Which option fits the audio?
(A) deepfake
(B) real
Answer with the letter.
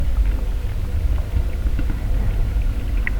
B